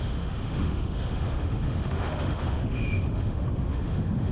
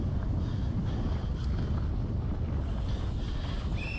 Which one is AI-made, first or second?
first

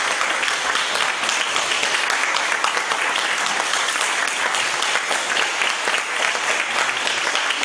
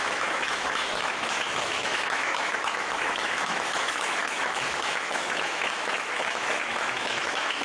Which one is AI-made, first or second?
second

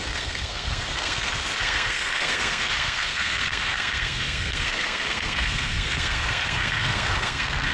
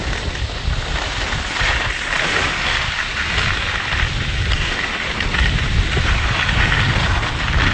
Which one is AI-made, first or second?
first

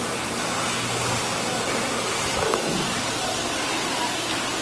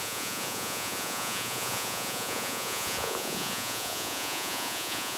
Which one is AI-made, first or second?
second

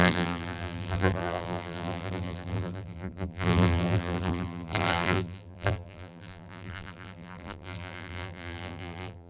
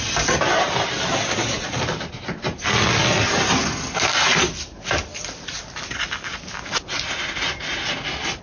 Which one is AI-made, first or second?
first